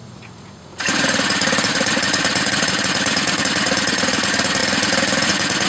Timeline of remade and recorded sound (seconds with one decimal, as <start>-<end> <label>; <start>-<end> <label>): 0.0-5.7 remade